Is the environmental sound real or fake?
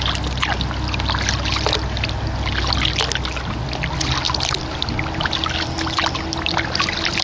real